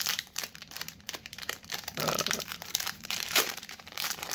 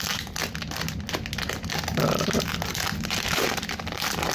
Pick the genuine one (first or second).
second